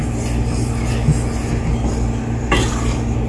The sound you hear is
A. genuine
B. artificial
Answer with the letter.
A